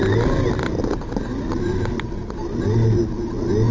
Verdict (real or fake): real